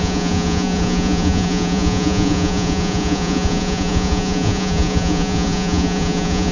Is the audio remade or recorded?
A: remade